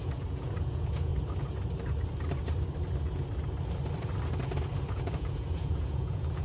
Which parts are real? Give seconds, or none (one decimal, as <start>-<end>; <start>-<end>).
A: 1.1-4.9